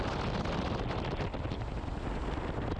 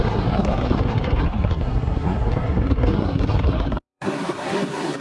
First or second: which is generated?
second